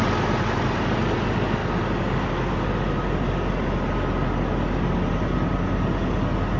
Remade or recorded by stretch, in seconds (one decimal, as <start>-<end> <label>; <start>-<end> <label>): 0.0-6.6 recorded